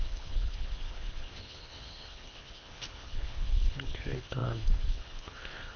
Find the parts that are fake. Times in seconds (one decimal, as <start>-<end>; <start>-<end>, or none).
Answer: 0.0-5.8